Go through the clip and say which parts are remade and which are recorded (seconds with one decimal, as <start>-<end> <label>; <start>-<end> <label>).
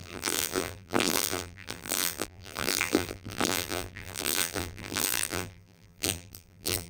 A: 0.0-6.9 remade